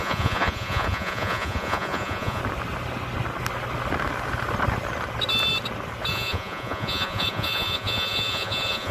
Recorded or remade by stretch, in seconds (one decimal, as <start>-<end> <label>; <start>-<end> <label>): 0.0-2.4 remade; 2.4-6.1 recorded; 6.1-8.9 remade